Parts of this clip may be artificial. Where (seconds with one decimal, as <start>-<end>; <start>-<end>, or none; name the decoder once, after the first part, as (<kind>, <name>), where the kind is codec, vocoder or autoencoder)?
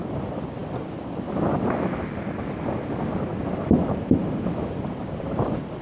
0.0-0.6 (vocoder, BigVGAN v2); 2.0-5.8